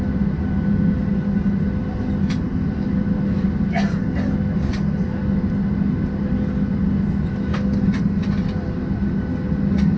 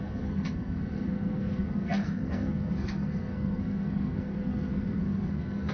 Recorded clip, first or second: first